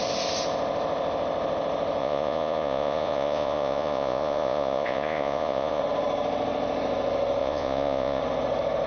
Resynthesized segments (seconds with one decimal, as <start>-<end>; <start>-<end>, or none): 2.0-5.8; 7.4-8.2